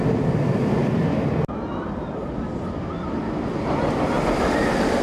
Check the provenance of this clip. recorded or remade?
recorded